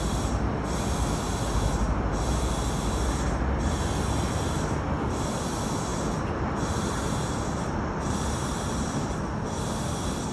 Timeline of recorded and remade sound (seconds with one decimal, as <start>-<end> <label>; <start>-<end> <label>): 0.0-10.3 recorded

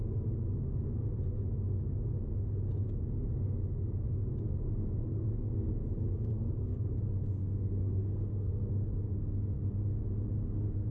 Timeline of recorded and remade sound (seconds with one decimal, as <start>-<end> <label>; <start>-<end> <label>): 0.0-4.5 recorded; 4.5-5.7 remade; 5.7-7.4 recorded; 7.4-8.7 remade; 8.7-10.9 recorded

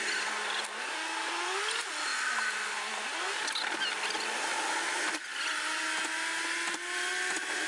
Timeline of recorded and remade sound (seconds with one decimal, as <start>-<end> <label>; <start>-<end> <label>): 0.0-7.7 recorded

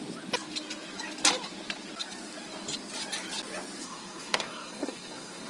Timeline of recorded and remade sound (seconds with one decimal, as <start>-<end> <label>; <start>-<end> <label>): 0.0-3.8 recorded; 3.8-5.5 remade

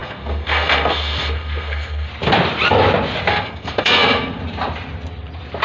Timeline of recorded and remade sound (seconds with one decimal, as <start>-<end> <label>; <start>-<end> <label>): 0.0-2.1 remade; 2.1-3.3 recorded; 3.3-4.4 remade; 4.4-5.6 recorded

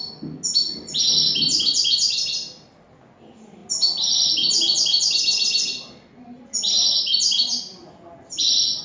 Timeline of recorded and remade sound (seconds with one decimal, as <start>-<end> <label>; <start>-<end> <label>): 0.0-8.8 recorded